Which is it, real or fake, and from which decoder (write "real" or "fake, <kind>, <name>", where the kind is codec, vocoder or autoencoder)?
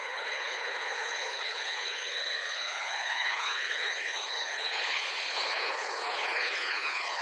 fake, codec, HILCodec